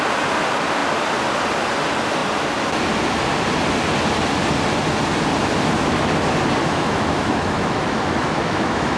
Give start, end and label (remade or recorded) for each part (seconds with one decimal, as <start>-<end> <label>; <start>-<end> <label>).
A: 0.0-6.6 recorded; 6.6-9.0 remade